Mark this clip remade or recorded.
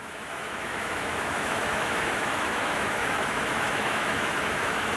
remade